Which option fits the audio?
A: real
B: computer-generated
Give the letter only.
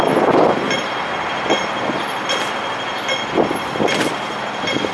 A